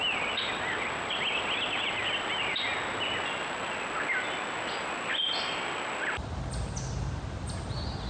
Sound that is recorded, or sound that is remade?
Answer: recorded